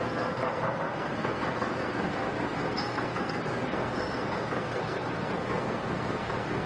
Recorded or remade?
remade